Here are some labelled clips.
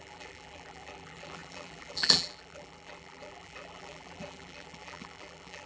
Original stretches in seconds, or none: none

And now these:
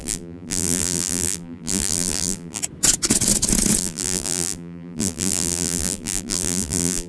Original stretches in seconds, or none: 2.6-3.8

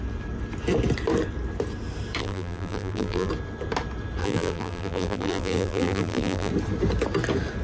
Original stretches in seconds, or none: 0.0-2.2; 3.3-4.2; 6.5-7.6

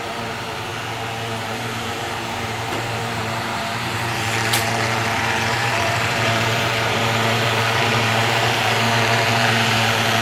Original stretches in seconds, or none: 0.7-1.4

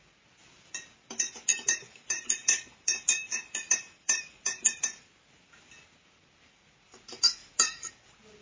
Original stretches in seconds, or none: 0.0-1.5; 5.5-7.4; 7.9-8.4